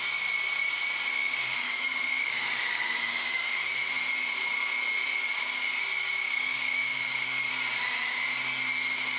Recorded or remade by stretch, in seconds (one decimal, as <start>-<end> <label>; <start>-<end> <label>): 0.0-1.1 recorded; 1.1-3.5 remade; 3.5-6.2 recorded; 6.2-7.5 remade; 7.5-9.2 recorded